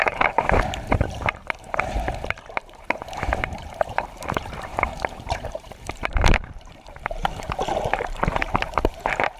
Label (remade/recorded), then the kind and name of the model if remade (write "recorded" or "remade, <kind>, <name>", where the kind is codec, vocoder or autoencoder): remade, vocoder, BigVGAN v2